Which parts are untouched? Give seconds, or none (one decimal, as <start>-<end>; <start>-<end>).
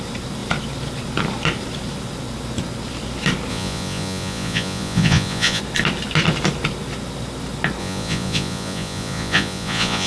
0.0-3.5; 5.6-7.8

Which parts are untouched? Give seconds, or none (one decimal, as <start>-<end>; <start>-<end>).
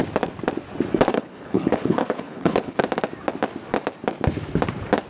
0.0-1.1; 2.8-5.1